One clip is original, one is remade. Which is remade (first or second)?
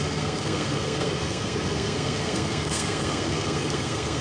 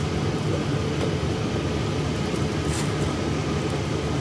first